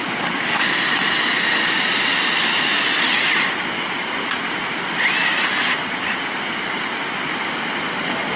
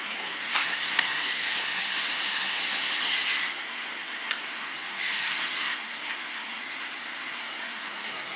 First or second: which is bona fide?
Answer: first